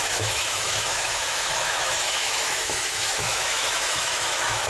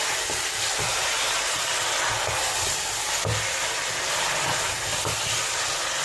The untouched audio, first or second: second